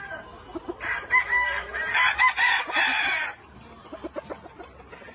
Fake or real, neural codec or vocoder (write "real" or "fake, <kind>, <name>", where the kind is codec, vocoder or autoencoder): real